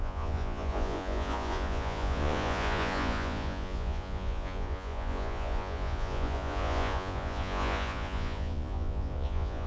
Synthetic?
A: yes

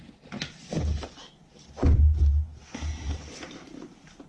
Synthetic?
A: no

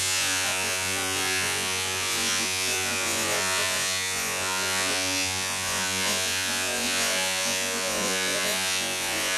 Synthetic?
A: yes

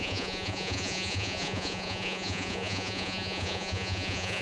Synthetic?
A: yes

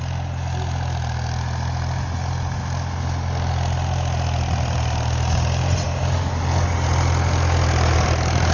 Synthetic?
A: no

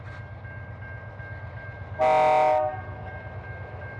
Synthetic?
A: no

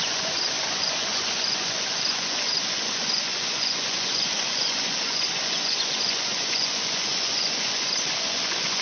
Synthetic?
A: yes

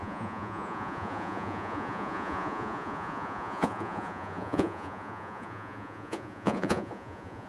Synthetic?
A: yes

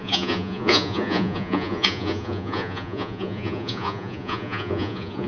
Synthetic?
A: yes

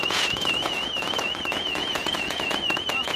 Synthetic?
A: yes